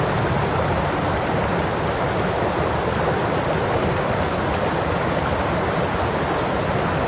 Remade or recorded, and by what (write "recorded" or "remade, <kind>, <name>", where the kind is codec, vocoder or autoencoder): recorded